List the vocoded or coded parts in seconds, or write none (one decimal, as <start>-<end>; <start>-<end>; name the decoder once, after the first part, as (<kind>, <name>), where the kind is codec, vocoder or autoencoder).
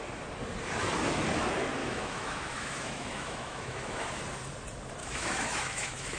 1.8-4.2 (autoencoder, DAC-VAE); 5.0-6.2